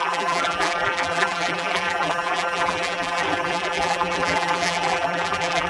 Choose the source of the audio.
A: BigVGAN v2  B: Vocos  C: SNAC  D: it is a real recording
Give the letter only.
A